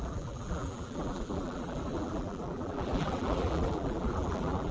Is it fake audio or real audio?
fake